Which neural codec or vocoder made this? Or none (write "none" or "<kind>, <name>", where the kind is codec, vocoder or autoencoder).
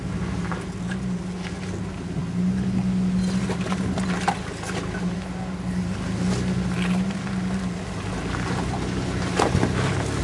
none